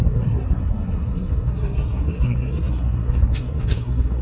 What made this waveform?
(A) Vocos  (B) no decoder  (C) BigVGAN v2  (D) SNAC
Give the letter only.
D